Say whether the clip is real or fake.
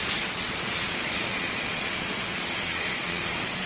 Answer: fake